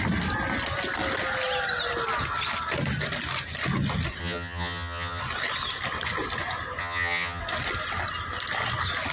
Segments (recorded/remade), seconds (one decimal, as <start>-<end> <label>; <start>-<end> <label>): 0.0-4.2 recorded; 4.2-5.2 remade; 5.2-6.8 recorded; 6.8-7.4 remade; 7.4-9.1 recorded